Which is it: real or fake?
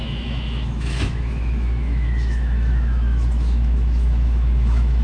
fake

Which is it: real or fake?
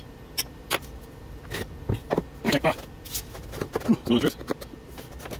real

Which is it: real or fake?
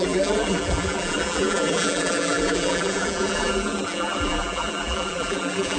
fake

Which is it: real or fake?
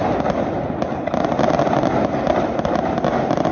real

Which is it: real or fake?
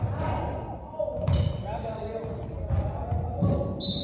real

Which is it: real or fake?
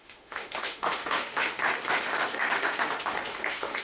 fake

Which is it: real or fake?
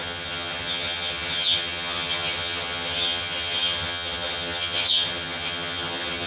fake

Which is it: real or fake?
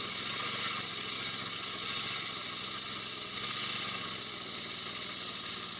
real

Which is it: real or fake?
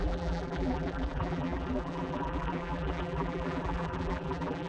fake